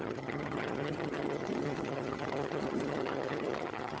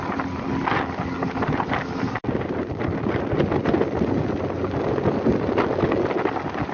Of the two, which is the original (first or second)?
second